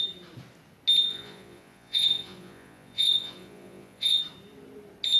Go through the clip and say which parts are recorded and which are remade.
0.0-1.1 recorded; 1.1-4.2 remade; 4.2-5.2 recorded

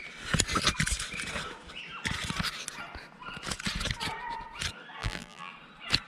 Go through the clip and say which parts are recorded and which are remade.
0.0-5.0 recorded; 5.0-5.5 remade; 5.5-6.1 recorded

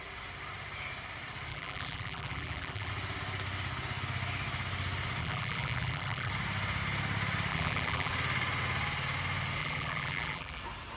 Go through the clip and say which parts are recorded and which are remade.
0.0-1.5 recorded; 1.5-2.9 remade; 2.9-5.2 recorded; 5.2-6.3 remade; 6.3-7.5 recorded; 7.5-8.1 remade; 8.1-9.6 recorded; 9.6-10.6 remade; 10.6-11.0 recorded

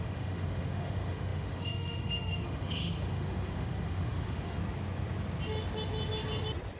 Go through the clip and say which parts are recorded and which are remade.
0.0-4.6 remade; 4.6-6.8 recorded

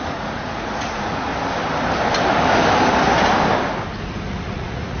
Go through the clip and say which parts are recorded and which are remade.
0.0-1.3 remade; 1.3-4.3 recorded; 4.3-5.0 remade

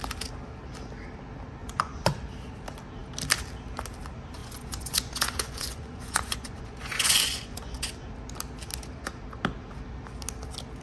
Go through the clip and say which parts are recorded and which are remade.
0.0-1.6 recorded; 1.6-2.2 remade; 2.2-4.4 recorded; 4.4-7.9 remade; 7.9-10.8 recorded

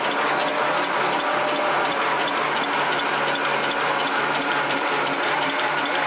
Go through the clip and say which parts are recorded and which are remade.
0.0-0.4 remade; 0.4-4.1 recorded; 4.1-6.1 remade

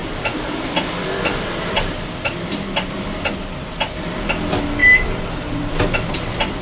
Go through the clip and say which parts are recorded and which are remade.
0.0-3.3 remade; 3.3-4.8 recorded; 4.8-6.6 remade